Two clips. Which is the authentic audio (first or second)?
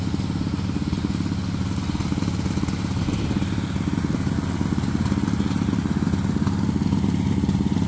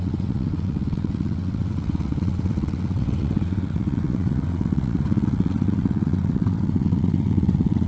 first